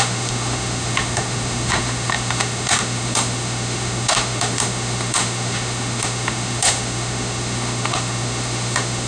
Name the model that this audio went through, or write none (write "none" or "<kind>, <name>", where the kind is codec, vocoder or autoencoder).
autoencoder, DAC-VAE